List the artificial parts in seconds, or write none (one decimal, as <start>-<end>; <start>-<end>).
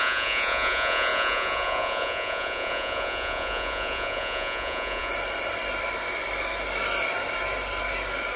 0.0-5.1